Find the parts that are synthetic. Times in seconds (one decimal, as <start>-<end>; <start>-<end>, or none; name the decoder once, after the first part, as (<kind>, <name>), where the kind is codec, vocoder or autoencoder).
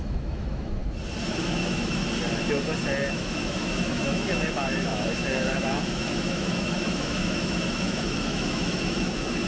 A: 0.0-0.8 (autoencoder, DAC-VAE); 1.4-2.0; 3.1-9.5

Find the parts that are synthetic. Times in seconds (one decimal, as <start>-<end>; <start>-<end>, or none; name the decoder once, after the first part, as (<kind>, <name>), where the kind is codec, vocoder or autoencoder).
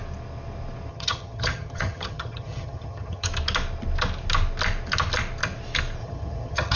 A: 0.9-3.3 (vocoder, HiFi-GAN); 6.0-6.8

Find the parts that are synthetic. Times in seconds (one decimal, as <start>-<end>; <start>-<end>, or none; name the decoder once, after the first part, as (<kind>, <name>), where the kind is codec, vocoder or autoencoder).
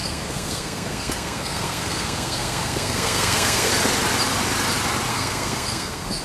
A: 0.0-3.7 (codec, SNAC); 5.1-6.2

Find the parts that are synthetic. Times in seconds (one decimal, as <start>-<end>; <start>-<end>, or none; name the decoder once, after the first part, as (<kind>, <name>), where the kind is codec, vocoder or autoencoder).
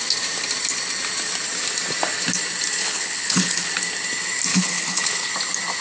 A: 2.8-3.7 (codec, HILCodec); 4.5-5.3